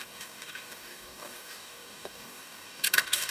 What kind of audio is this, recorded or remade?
remade